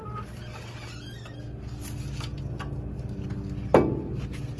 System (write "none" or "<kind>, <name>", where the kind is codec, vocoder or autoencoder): none